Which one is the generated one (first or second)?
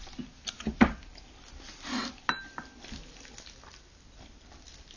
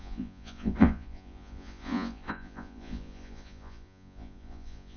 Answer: second